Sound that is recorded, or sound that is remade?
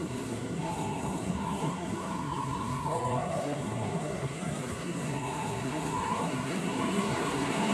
remade